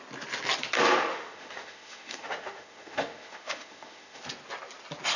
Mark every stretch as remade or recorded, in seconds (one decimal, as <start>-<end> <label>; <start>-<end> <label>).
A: 0.0-1.1 recorded; 1.1-4.2 remade; 4.2-5.2 recorded